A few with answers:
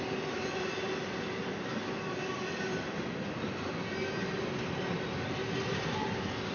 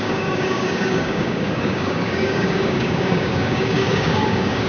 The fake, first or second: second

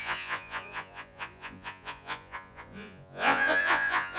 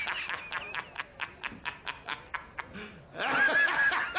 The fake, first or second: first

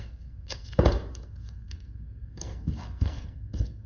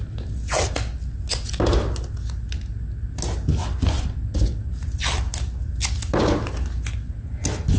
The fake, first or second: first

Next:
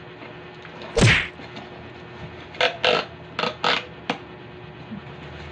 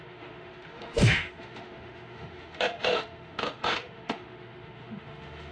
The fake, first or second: second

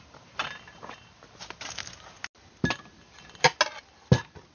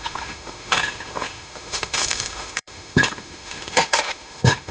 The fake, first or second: second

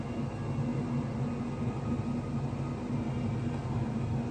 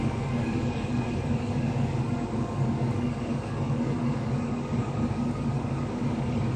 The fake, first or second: second